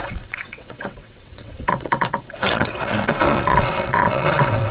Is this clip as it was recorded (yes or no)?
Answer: no